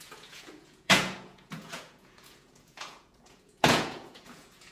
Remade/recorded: remade